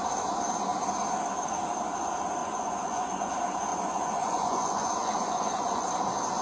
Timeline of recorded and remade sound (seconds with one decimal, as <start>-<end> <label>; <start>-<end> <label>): 0.0-2.4 recorded; 2.4-3.3 remade; 3.3-3.7 recorded; 3.7-5.9 remade; 5.9-6.4 recorded